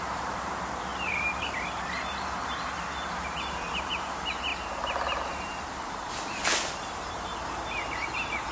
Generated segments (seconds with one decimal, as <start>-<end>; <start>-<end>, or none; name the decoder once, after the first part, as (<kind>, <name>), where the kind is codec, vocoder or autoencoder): 0.0-4.5 (vocoder, BigVGAN v2); 5.3-8.5